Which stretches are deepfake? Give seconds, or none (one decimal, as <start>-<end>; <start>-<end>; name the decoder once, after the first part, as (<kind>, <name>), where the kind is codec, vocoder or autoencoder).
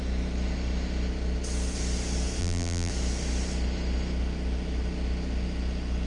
2.4-2.9 (vocoder, BigVGAN v2)